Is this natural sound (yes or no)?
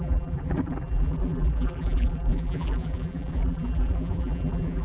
no